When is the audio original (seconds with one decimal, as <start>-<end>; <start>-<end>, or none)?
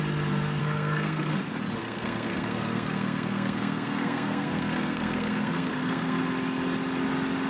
0.0-0.6; 1.4-1.8; 6.2-7.5